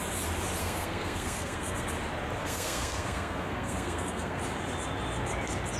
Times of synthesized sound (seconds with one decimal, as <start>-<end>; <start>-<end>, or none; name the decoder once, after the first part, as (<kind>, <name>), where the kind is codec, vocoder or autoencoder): 0.6-1.9 (codec, SNAC); 2.4-4.4